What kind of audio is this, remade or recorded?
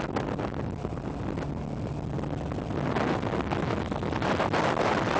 recorded